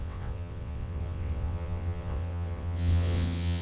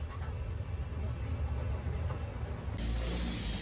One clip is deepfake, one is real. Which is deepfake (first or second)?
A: first